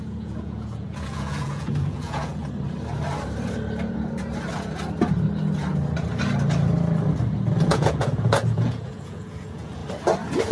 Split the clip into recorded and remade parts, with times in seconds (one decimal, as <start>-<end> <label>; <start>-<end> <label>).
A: 0.0-2.4 remade; 2.4-7.7 recorded; 7.7-9.8 remade; 9.8-10.5 recorded